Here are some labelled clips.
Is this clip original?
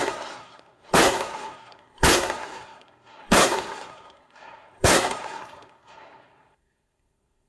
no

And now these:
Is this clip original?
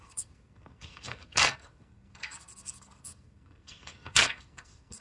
no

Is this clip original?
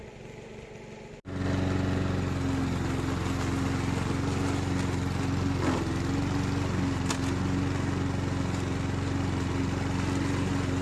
yes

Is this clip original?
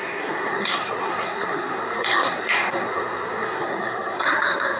no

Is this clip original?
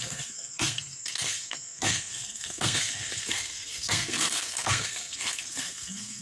no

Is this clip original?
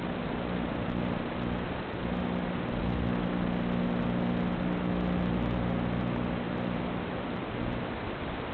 yes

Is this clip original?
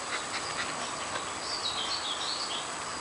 yes